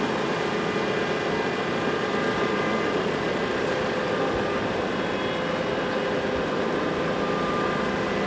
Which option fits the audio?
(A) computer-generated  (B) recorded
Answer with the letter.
B